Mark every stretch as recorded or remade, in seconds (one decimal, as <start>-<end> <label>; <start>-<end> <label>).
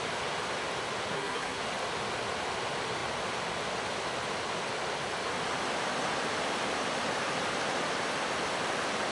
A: 0.0-1.1 recorded; 1.1-1.6 remade; 1.6-9.1 recorded